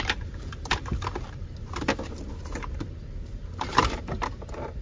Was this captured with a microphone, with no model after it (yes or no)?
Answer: no